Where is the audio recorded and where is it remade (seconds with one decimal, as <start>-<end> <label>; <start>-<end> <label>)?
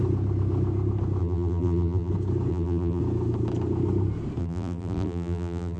0.0-1.2 recorded; 1.2-2.1 remade; 2.1-2.5 recorded; 2.5-3.0 remade; 3.0-4.4 recorded; 4.4-5.8 remade